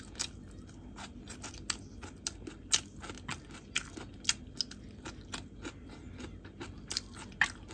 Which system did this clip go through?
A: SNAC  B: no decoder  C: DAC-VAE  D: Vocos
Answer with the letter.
B